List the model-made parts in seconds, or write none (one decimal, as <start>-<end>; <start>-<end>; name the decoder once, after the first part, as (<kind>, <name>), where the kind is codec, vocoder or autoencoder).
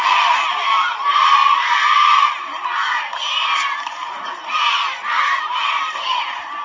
0.0-1.4 (vocoder, BigVGAN v2); 5.4-6.6